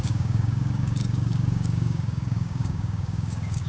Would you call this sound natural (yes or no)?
no